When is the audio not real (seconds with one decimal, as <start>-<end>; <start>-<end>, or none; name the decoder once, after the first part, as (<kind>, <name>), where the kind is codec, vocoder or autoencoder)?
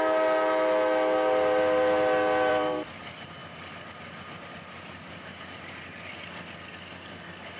2.5-3.0 (vocoder, BigVGAN v2)